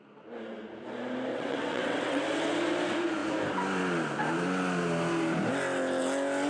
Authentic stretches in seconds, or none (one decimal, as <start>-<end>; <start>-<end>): 0.0-1.3; 2.2-6.5